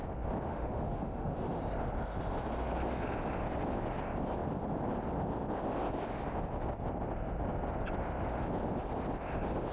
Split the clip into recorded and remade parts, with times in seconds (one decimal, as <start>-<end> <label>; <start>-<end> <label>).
0.0-0.5 recorded; 0.5-1.6 remade; 1.6-9.7 recorded